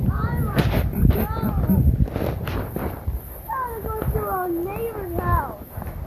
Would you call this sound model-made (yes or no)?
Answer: no